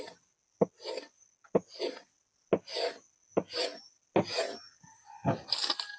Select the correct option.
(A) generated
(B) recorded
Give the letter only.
B